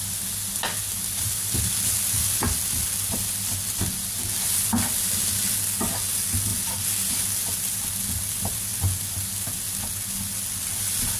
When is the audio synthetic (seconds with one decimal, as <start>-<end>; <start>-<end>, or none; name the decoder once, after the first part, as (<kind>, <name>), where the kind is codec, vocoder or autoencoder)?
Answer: none